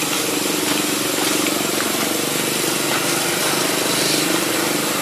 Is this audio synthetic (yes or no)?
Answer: no